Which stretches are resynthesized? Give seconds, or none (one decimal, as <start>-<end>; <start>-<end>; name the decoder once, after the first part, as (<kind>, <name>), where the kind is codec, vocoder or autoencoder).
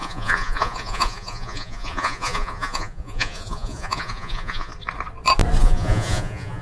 0.0-4.7 (vocoder, Vocos); 5.6-6.6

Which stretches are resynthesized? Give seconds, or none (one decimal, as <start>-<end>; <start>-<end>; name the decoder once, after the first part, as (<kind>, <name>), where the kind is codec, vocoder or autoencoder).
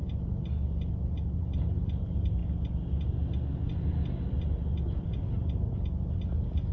none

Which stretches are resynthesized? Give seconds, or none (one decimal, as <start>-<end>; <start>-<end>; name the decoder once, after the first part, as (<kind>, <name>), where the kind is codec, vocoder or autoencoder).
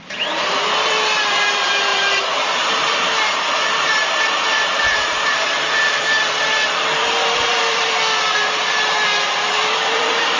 0.0-10.4 (vocoder, BigVGAN v2)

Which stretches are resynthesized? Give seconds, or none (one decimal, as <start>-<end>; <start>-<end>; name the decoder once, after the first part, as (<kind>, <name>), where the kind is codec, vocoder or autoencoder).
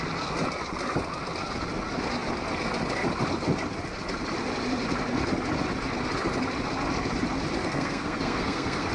7.6-8.9 (codec, SNAC)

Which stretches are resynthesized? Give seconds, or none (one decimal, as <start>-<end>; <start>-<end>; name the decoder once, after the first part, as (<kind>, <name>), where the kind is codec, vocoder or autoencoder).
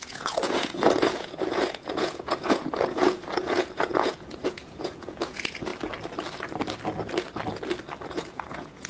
0.0-5.7 (vocoder, Vocos); 8.1-8.9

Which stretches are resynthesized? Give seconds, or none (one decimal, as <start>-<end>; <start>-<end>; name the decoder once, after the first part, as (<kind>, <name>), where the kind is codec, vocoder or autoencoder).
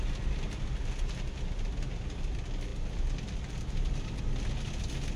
none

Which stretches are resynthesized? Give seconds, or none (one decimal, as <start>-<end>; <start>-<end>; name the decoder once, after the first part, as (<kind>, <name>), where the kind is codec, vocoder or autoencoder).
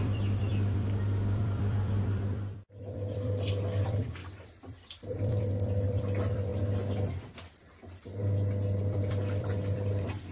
0.0-6.5 (vocoder, BigVGAN v2); 8.8-10.3